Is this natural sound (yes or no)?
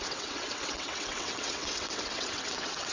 no